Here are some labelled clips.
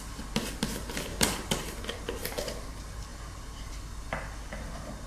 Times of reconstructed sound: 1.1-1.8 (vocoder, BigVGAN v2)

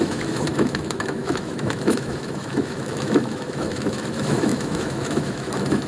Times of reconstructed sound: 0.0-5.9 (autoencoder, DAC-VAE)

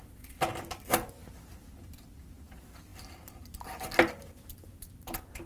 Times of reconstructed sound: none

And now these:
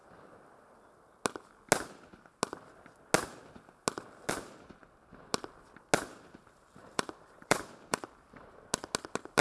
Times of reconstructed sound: 6.8-8.4 (vocoder, BigVGAN v2)

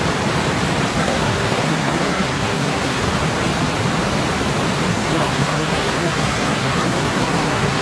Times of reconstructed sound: 1.0-3.0 (codec, SNAC); 4.9-7.8

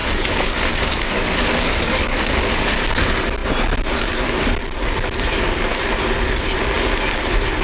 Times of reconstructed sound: 0.0-2.9 (codec, DAC)

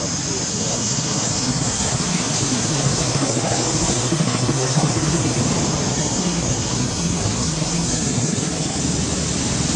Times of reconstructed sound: 0.5-5.4 (codec, SNAC); 5.9-8.8

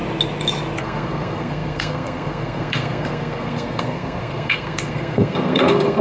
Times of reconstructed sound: 0.8-6.0 (codec, SNAC)